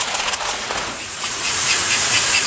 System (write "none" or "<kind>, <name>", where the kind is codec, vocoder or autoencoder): vocoder, Vocos